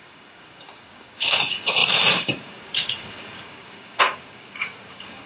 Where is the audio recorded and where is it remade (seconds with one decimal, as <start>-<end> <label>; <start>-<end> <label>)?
0.0-5.3 remade